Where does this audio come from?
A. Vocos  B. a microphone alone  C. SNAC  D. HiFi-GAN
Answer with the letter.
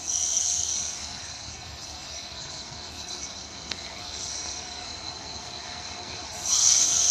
C